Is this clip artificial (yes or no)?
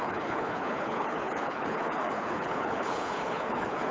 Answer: yes